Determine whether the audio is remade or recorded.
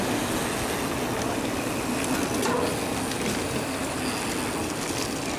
recorded